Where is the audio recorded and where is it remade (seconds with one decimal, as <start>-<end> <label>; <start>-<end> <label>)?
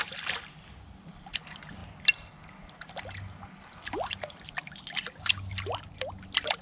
0.0-6.6 recorded